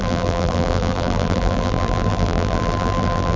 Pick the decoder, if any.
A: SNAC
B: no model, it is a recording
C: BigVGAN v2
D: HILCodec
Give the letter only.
C